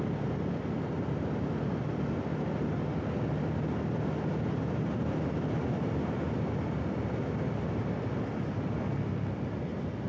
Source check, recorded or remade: recorded